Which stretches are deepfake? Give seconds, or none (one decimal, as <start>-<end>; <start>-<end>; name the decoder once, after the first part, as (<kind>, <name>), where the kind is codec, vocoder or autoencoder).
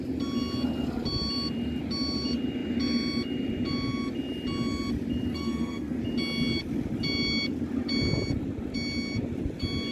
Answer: 5.3-6.0 (codec, SNAC)